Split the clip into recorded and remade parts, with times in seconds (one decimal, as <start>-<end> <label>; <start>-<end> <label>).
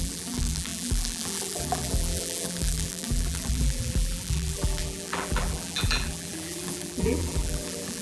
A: 0.0-8.0 remade